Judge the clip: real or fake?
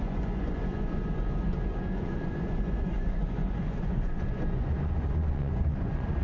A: fake